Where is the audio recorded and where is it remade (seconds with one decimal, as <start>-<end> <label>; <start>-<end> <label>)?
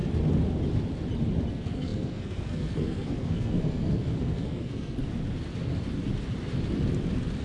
0.0-1.5 recorded; 1.5-5.0 remade; 5.0-7.4 recorded